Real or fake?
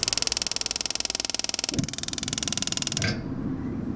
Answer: real